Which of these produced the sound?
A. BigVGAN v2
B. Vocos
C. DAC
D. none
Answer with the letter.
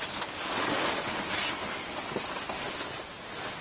D